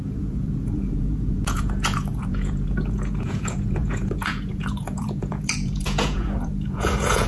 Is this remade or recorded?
remade